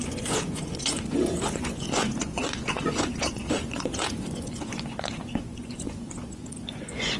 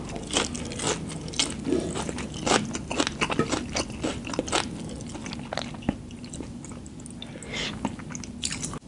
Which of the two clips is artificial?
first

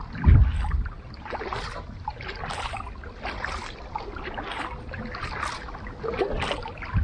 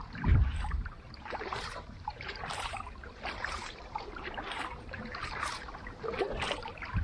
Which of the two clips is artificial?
second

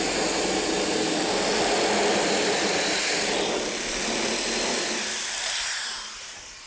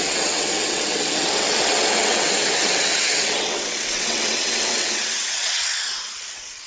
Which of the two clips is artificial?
second